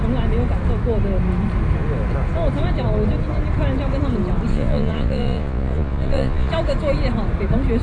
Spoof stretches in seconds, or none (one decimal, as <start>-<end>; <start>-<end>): 4.5-6.5